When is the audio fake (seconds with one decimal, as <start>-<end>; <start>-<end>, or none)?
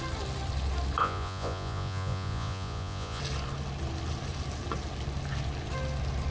1.0-3.2